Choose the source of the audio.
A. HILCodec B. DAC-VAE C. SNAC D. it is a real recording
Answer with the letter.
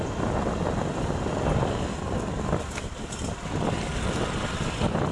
D